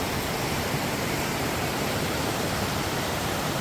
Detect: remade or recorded remade